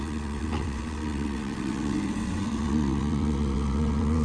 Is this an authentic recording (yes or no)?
no